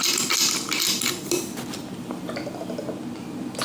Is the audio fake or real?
real